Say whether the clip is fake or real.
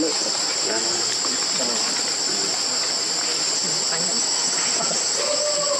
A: real